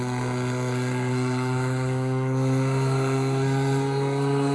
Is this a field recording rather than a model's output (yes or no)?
no